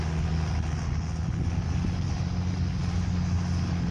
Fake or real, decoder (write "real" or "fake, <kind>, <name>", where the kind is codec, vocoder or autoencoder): real